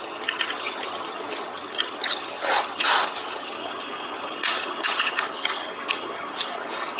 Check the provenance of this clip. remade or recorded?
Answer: remade